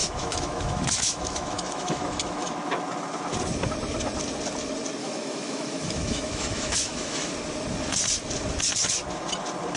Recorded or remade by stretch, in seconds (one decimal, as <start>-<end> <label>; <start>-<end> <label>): 0.0-2.5 remade; 2.5-5.0 recorded; 5.0-7.3 remade; 7.3-9.8 recorded